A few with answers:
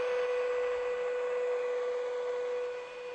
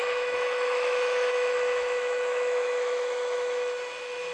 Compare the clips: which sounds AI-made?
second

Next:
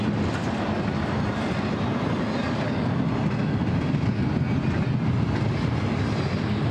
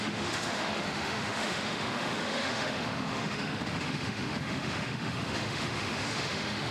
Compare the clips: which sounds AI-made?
second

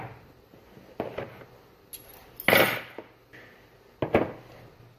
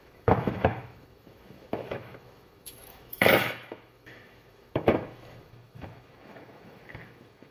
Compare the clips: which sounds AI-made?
second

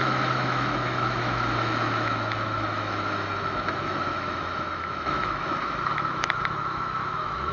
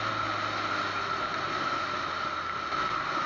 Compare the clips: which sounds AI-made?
first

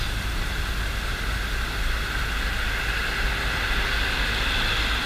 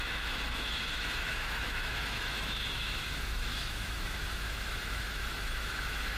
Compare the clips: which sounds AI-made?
second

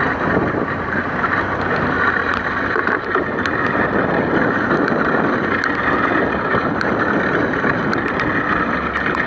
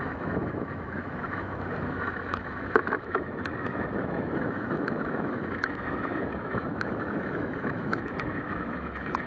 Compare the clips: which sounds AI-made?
second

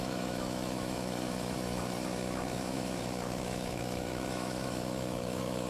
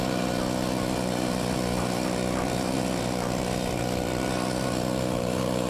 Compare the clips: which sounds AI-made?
first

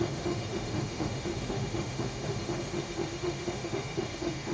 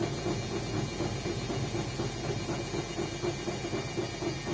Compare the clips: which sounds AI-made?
first